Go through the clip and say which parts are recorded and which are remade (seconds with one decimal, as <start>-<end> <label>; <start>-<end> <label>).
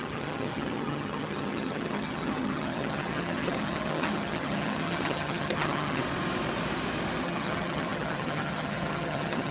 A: 0.0-6.0 remade; 6.0-7.2 recorded; 7.2-9.5 remade